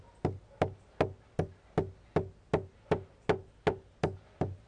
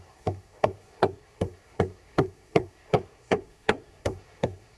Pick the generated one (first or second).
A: second